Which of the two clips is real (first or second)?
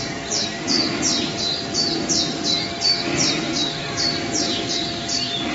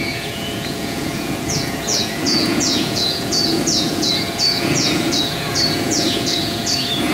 first